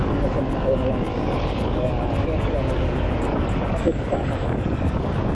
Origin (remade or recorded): remade